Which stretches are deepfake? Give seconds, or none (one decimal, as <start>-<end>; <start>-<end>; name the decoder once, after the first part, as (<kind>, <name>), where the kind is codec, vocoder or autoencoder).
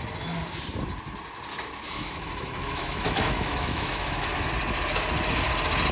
1.5-4.5 (autoencoder, DAC-VAE)